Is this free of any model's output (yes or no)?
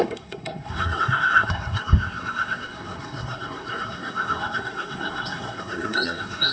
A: no